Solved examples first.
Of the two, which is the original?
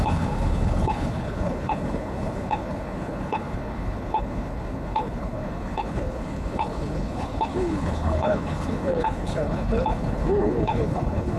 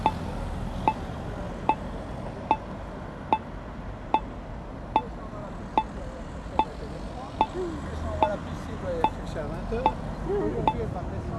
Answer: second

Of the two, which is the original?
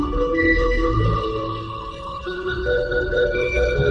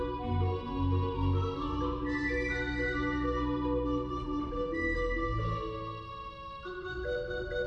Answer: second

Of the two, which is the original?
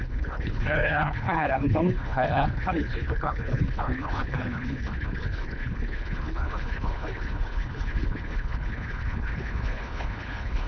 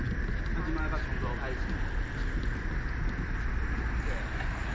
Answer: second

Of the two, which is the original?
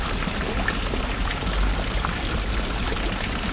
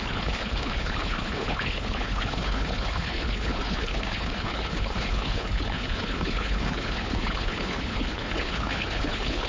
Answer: first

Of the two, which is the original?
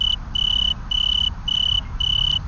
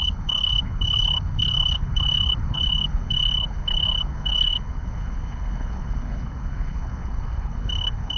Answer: first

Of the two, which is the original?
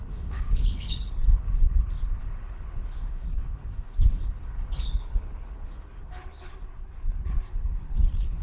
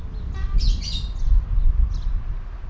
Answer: second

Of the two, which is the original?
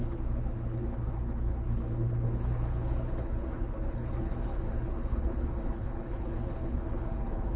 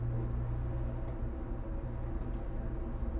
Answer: second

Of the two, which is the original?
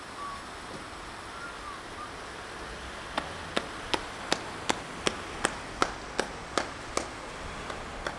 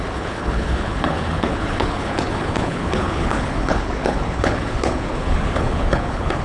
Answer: first